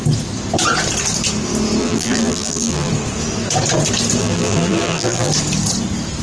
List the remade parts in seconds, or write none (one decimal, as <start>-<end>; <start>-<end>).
1.8-2.9; 4.2-5.3